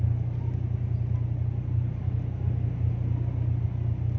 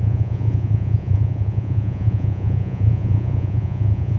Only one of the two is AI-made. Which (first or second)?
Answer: second